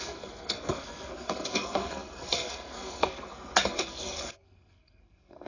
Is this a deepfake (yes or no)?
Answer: yes